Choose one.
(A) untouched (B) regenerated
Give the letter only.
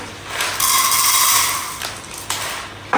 A